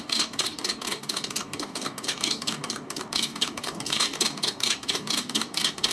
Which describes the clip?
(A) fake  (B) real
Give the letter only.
A